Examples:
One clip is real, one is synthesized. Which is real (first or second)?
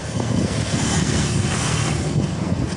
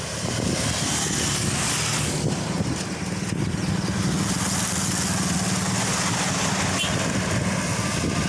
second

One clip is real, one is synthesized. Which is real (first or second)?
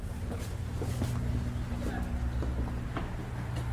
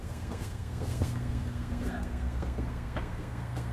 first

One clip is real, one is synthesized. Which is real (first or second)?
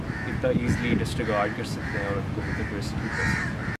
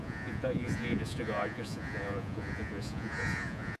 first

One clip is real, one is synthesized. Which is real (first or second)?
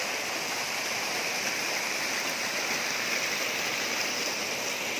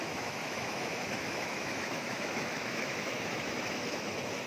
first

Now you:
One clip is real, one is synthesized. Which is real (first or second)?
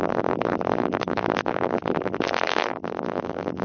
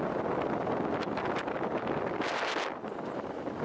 second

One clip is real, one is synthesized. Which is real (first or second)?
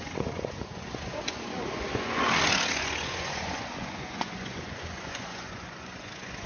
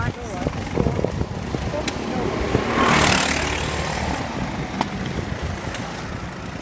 second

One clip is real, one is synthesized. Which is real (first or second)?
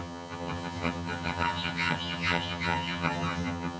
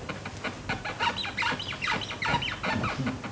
second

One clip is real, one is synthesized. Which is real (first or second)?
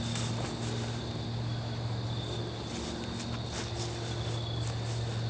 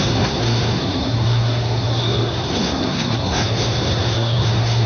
first